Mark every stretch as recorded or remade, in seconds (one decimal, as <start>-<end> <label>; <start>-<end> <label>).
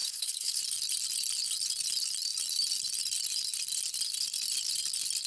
0.0-0.6 remade; 0.6-5.3 recorded